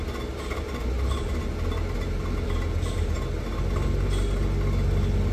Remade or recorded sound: recorded